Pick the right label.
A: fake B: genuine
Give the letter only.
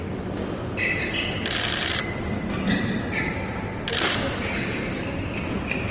B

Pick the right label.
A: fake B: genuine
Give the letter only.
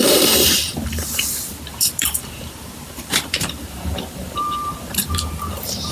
A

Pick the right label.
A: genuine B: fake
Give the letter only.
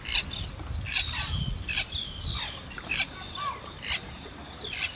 A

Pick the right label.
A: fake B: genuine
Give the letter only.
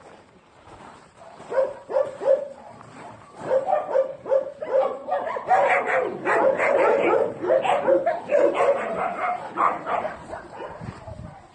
A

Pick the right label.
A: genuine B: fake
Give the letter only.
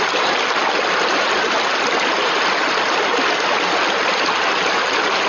A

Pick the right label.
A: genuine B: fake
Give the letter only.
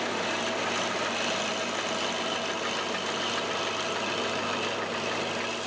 A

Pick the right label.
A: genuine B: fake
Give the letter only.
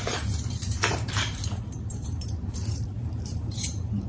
B